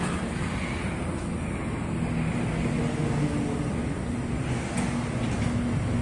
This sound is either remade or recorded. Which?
recorded